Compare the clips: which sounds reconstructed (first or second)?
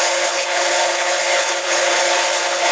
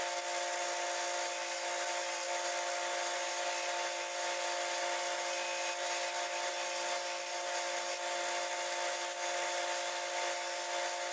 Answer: first